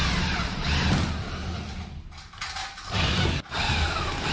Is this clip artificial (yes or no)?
no